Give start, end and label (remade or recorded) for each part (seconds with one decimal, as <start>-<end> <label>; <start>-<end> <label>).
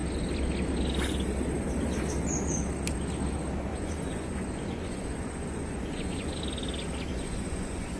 0.0-3.7 recorded; 3.7-6.4 remade; 6.4-7.1 recorded; 7.1-8.0 remade